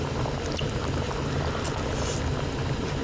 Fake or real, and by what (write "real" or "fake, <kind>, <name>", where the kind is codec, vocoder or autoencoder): real